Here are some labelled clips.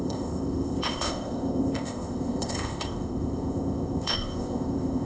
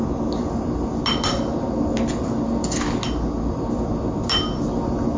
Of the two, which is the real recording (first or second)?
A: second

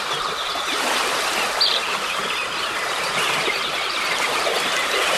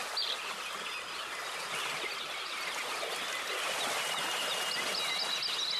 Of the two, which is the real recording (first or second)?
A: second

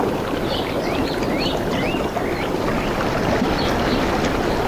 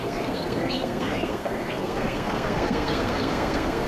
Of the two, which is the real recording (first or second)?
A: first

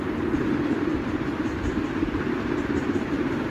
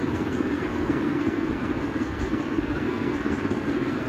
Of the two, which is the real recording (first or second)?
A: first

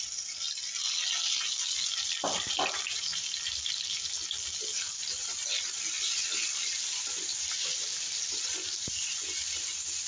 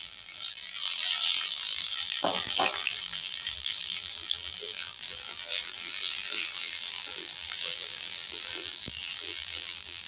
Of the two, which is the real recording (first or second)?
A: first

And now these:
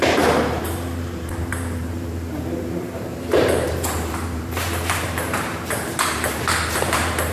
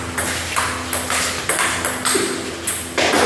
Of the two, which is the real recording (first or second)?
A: second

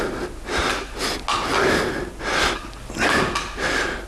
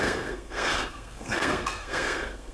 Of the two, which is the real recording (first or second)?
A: first